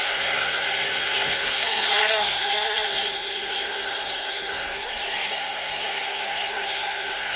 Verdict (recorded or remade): remade